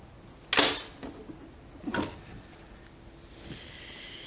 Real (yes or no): yes